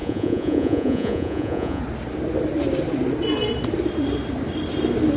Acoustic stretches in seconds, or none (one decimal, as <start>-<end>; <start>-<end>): 1.8-5.2